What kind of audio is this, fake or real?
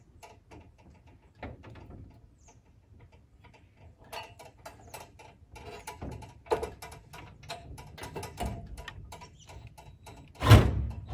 real